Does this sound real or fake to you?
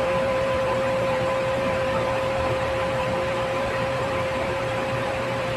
fake